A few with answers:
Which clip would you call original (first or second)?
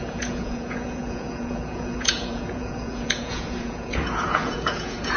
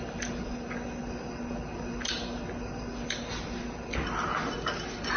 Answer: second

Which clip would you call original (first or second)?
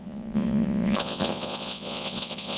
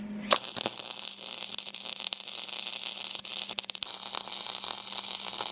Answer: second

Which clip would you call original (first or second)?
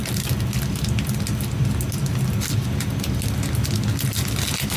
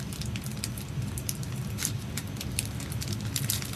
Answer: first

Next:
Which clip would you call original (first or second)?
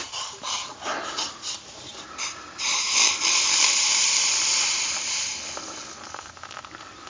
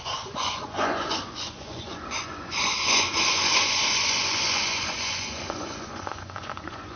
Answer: first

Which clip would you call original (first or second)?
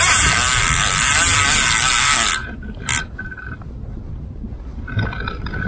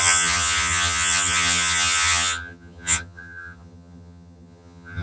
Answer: first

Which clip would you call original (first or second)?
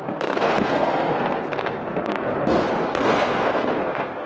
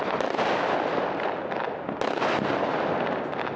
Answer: second